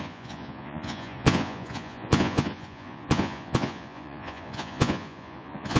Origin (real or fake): fake